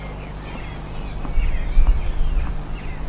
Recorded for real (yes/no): yes